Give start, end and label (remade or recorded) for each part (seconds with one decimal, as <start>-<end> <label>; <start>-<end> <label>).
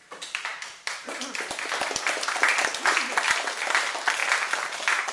0.0-5.1 recorded